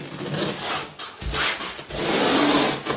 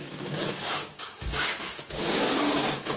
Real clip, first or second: first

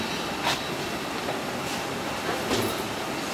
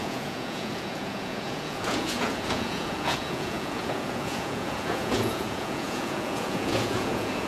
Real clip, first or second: first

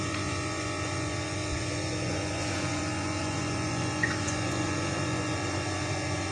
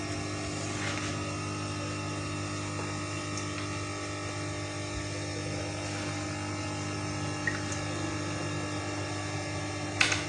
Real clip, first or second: second